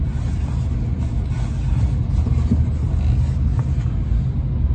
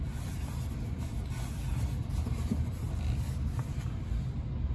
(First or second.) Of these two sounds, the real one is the first